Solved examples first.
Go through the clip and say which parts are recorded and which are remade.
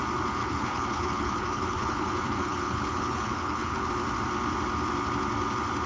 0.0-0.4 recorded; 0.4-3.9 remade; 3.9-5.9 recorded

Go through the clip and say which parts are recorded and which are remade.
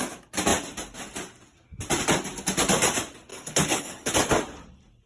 0.0-3.3 recorded; 3.3-4.1 remade; 4.1-5.1 recorded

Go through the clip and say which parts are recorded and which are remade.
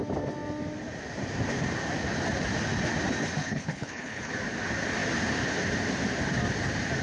0.0-3.4 recorded; 3.4-4.3 remade; 4.3-7.0 recorded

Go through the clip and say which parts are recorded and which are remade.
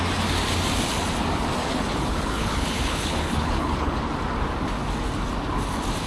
0.0-1.6 recorded; 1.6-4.0 remade; 4.0-6.1 recorded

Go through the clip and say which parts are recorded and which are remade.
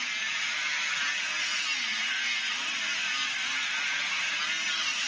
0.0-5.1 recorded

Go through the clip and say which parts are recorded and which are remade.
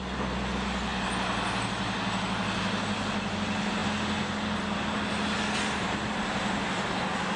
0.0-7.4 recorded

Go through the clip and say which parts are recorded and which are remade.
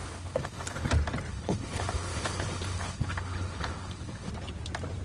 0.0-0.9 remade; 0.9-1.3 recorded; 1.3-4.3 remade; 4.3-5.0 recorded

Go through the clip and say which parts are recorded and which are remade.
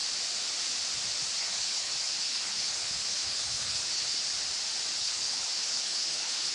0.0-1.4 recorded; 1.4-4.2 remade; 4.2-5.0 recorded; 5.0-6.5 remade